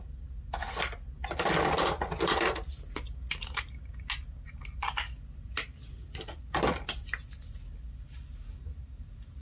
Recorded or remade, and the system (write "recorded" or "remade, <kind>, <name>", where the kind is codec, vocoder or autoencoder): recorded